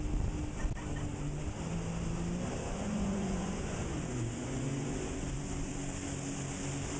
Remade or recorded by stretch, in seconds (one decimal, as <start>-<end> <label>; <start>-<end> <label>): 0.0-2.6 recorded; 2.6-5.7 remade; 5.7-7.0 recorded